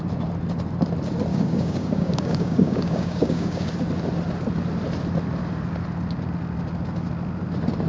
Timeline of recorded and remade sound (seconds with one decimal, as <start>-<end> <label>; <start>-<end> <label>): 0.0-1.3 recorded; 1.3-3.7 remade; 3.7-7.9 recorded